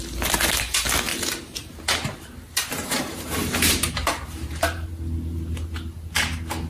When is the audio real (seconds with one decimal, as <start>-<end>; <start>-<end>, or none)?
0.0-1.1; 4.9-6.7